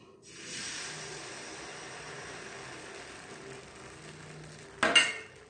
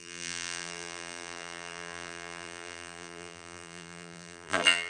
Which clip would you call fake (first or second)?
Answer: second